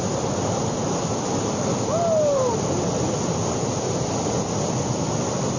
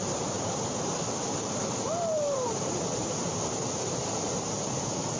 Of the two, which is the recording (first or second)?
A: first